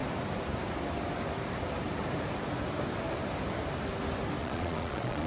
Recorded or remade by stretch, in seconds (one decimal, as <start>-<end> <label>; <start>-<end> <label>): 0.0-4.4 recorded; 4.4-5.3 remade